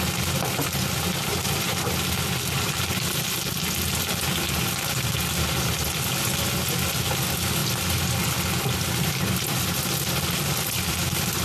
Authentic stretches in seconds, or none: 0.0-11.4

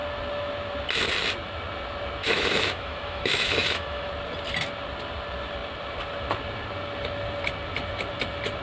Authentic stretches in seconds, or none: 0.0-2.2; 4.1-8.6

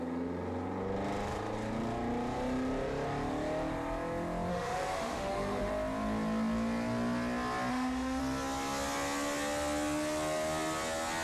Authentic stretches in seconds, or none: 0.0-4.5; 5.7-7.7; 8.2-11.2